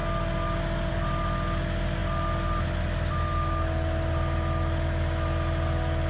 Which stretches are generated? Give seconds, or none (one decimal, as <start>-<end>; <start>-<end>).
none